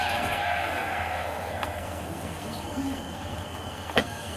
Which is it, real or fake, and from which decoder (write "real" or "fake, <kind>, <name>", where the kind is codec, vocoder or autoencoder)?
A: fake, codec, SNAC